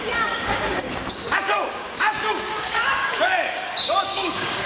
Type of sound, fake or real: fake